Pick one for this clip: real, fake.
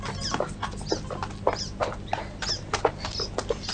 real